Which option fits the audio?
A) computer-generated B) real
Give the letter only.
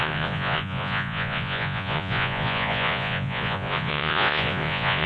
A